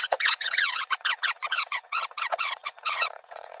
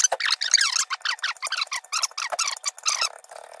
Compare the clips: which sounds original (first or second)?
second